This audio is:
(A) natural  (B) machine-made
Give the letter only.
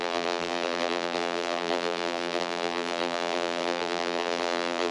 B